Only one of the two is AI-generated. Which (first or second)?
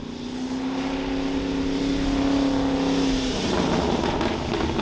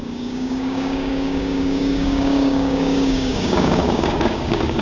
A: second